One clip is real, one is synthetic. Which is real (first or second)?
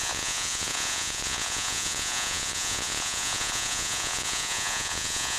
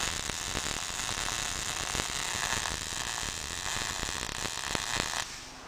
second